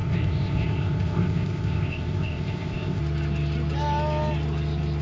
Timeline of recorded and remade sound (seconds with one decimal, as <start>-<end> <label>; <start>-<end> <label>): 0.0-3.0 remade; 3.0-5.0 recorded